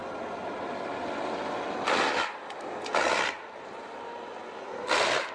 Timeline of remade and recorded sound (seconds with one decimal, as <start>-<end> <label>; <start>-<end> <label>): 0.0-5.3 recorded

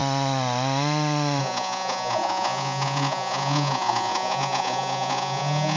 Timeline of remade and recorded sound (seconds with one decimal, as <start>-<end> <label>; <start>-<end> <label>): 0.0-1.4 recorded; 1.4-5.8 remade

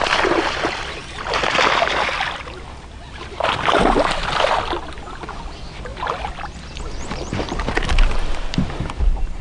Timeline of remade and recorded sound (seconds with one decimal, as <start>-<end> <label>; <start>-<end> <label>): 0.0-9.4 recorded

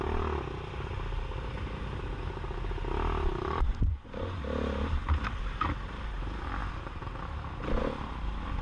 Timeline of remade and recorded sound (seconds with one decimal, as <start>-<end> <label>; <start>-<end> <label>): 0.0-3.7 recorded; 3.7-4.4 remade; 4.4-8.6 recorded

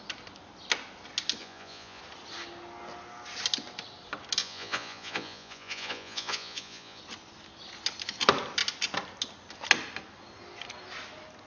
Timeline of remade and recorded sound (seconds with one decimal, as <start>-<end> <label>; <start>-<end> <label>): 0.0-1.4 recorded; 1.4-2.0 remade; 2.0-4.4 recorded; 4.4-7.0 remade; 7.0-11.5 recorded

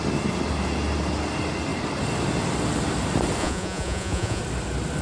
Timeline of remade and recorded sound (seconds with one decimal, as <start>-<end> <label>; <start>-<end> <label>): 0.0-3.4 recorded; 3.4-4.4 remade; 4.4-5.0 recorded

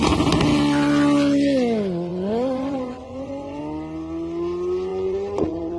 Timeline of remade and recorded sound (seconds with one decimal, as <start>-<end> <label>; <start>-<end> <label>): 0.0-2.1 recorded; 2.1-3.6 remade; 3.6-4.9 recorded; 4.9-5.8 remade